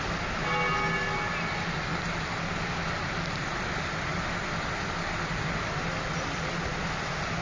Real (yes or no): yes